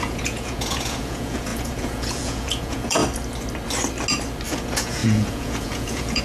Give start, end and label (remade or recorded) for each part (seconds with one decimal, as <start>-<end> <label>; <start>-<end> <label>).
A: 0.0-3.0 remade; 3.0-4.5 recorded; 4.5-6.2 remade